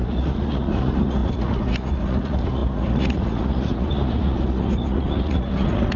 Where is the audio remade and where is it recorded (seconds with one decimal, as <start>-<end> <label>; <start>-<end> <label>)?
0.0-6.0 remade